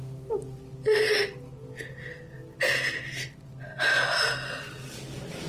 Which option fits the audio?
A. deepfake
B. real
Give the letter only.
B